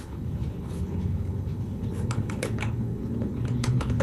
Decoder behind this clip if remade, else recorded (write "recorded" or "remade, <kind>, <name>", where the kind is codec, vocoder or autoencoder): remade, codec, HILCodec